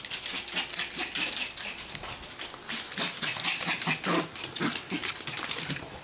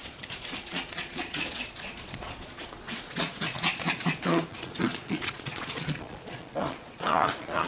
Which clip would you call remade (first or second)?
second